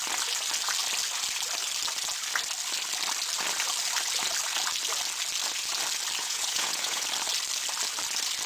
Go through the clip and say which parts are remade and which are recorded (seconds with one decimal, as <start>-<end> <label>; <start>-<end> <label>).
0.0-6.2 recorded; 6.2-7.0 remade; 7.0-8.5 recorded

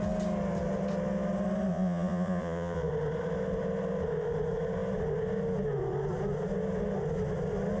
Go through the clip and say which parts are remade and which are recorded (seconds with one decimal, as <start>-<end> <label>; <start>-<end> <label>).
0.0-1.7 recorded; 1.7-2.9 remade; 2.9-7.8 recorded

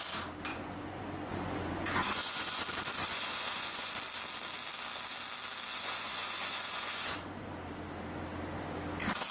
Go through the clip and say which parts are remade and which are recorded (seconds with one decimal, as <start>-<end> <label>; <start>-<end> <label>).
0.0-0.5 recorded; 0.5-2.6 remade; 2.6-3.0 recorded; 3.0-3.9 remade; 3.9-5.7 recorded; 5.7-7.5 remade; 7.5-9.3 recorded

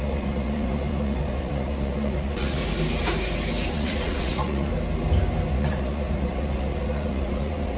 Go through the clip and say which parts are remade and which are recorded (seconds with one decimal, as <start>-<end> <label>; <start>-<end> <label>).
0.0-2.6 remade; 2.6-3.7 recorded; 3.7-4.7 remade; 4.7-5.5 recorded; 5.5-7.8 remade

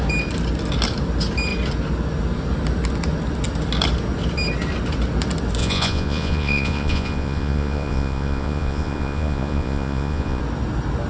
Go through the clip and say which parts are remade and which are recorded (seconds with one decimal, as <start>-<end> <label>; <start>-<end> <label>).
0.0-5.6 recorded; 5.6-10.4 remade; 10.4-11.1 recorded

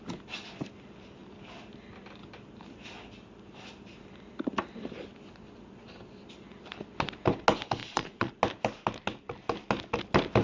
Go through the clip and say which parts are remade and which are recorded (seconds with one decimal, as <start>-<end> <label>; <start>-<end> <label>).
0.0-7.8 recorded; 7.8-8.3 remade; 8.3-10.4 recorded

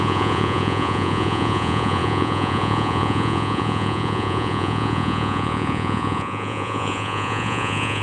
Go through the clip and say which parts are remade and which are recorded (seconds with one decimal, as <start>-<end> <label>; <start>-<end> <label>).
0.0-8.0 remade